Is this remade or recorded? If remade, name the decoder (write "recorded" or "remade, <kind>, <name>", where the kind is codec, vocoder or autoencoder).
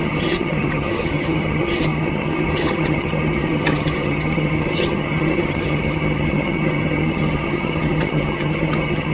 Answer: remade, vocoder, HiFi-GAN